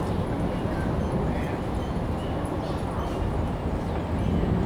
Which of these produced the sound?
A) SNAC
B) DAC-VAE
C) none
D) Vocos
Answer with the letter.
C